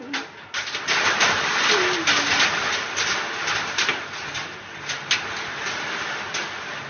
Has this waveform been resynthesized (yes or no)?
no